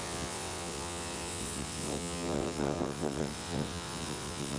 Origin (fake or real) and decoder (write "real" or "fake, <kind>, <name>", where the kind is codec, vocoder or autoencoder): fake, vocoder, WaveNeXt